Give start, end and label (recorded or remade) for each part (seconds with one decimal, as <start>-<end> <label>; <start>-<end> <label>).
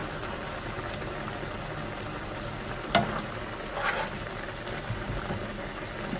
0.0-6.2 recorded